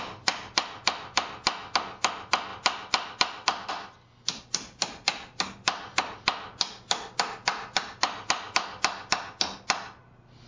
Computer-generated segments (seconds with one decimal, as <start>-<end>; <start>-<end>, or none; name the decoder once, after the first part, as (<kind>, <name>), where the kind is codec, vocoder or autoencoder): 2.5-3.7 (vocoder, BigVGAN v2)